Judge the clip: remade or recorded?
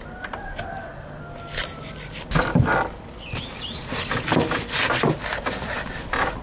recorded